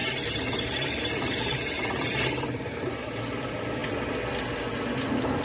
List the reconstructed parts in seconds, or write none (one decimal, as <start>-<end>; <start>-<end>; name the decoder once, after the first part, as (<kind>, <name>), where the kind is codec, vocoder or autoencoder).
0.0-3.2 (vocoder, BigVGAN v2)